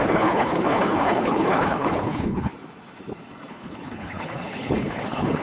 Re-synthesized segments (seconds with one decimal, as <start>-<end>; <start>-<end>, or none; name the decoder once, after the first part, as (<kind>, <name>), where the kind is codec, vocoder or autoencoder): 0.0-2.5 (codec, HILCodec); 3.5-5.4